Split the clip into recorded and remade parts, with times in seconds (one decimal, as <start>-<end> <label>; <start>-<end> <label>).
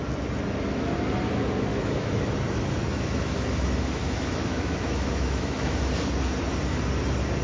0.0-1.7 recorded; 1.7-2.3 remade; 2.3-2.9 recorded; 2.9-5.9 remade; 5.9-7.4 recorded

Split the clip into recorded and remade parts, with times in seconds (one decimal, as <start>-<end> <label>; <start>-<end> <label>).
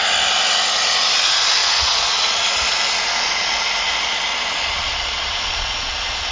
0.0-1.6 recorded; 1.6-2.6 remade; 2.6-3.0 recorded; 3.0-3.6 remade; 3.6-4.3 recorded; 4.3-6.3 remade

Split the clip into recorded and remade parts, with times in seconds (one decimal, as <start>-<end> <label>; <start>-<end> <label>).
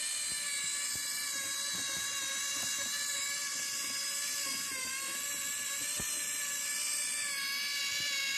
0.0-8.4 recorded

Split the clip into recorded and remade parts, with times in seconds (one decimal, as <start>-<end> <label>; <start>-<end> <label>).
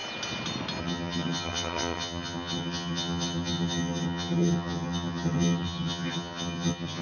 0.0-0.8 recorded; 0.8-7.0 remade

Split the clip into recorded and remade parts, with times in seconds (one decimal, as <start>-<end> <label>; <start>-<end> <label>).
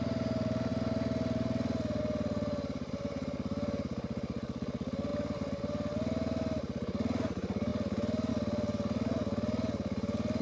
0.0-10.4 recorded